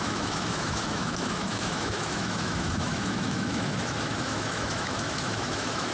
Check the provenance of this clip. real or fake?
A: fake